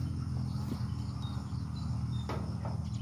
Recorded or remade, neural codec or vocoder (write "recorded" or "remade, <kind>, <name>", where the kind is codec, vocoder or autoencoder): recorded